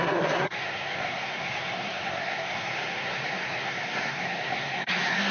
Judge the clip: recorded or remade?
remade